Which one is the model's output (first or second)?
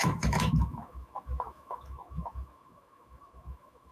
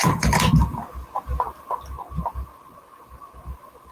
first